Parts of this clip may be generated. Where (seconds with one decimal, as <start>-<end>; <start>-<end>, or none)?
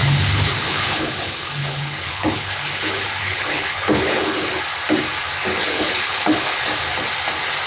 0.0-4.6; 5.5-6.6